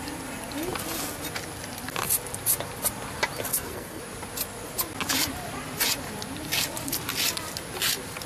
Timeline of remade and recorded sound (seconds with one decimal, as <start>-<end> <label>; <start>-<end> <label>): 0.0-3.5 recorded; 3.5-4.0 remade; 4.0-8.3 recorded